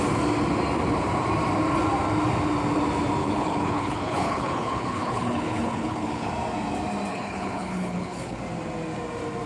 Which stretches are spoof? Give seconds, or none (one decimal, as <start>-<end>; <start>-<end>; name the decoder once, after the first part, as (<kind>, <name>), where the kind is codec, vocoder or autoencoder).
3.2-6.3 (codec, HILCodec); 7.1-8.4